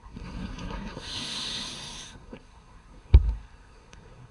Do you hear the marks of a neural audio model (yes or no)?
yes